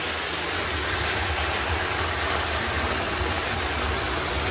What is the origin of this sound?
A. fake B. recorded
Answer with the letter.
B